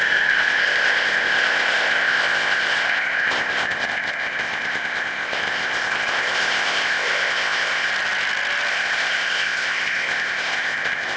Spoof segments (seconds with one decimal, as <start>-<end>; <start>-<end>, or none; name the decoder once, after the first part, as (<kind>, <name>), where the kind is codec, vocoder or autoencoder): 0.0-7.9 (codec, ZipCodec); 8.7-11.2